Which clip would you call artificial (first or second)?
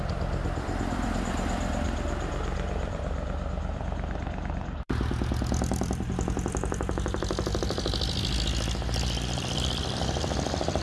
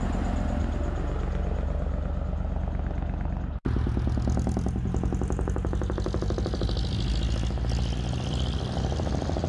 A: first